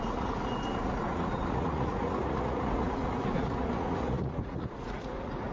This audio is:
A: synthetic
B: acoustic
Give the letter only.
A